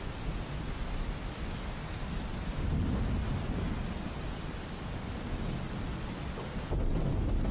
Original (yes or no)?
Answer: yes